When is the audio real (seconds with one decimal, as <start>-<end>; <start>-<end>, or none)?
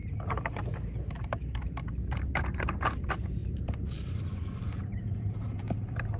none